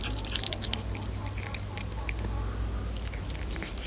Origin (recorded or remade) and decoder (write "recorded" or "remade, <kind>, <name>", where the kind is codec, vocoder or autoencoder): recorded